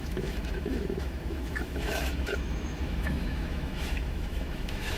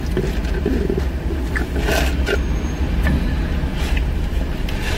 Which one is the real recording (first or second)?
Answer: second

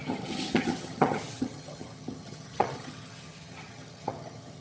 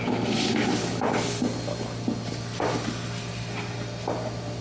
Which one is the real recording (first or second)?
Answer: second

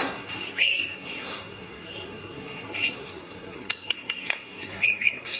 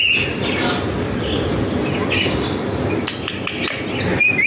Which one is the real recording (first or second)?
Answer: second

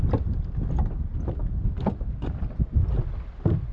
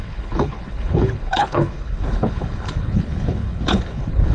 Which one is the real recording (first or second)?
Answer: first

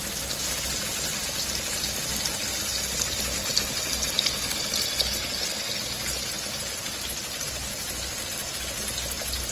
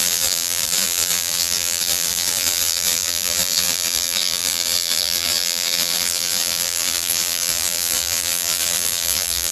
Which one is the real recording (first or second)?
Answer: first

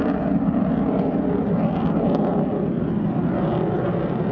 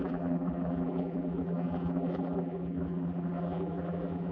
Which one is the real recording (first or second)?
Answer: first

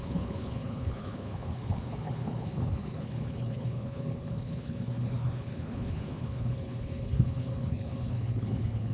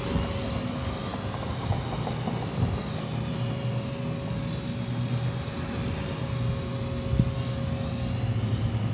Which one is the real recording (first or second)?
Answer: second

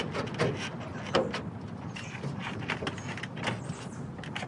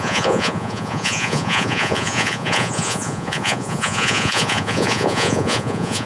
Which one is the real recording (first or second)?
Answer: first